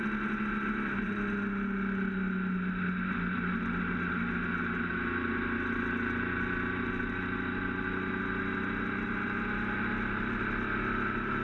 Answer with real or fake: real